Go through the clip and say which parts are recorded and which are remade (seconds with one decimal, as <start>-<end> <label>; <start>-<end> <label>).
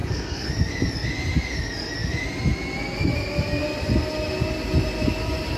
0.0-0.5 remade; 0.5-5.6 recorded